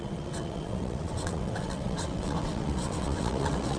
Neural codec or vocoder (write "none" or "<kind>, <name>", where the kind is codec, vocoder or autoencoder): vocoder, WaveNeXt